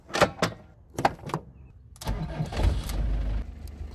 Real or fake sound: real